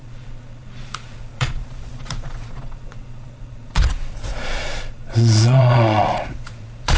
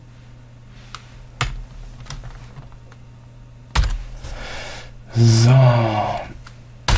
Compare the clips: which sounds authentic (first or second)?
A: second